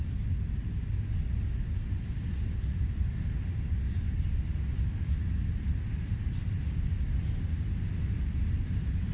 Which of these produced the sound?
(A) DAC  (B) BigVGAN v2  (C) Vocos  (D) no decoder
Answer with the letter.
D